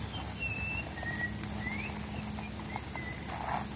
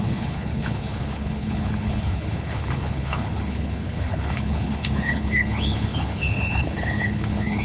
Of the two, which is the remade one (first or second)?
second